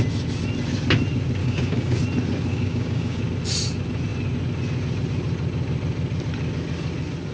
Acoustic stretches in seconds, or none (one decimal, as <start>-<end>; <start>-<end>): 0.0-1.4; 2.0-2.5; 3.2-7.3